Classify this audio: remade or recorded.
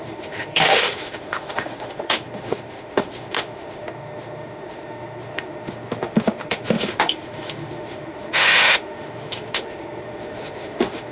remade